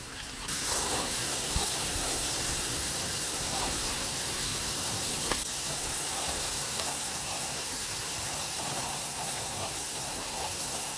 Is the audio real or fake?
fake